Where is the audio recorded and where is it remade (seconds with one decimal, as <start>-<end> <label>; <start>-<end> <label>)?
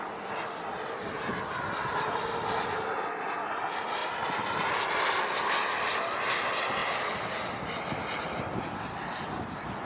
0.0-9.8 recorded